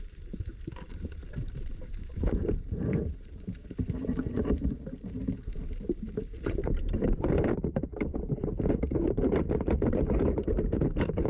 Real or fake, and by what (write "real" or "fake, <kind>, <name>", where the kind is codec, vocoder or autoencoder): fake, vocoder, BigVGAN v2